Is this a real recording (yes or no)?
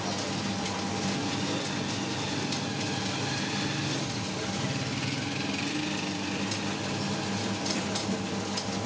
yes